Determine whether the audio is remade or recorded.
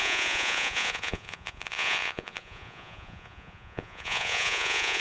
remade